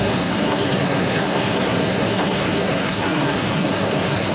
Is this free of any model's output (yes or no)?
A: no